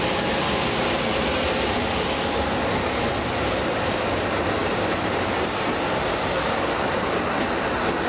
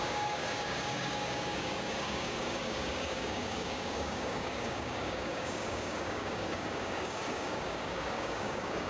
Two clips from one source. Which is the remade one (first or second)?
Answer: second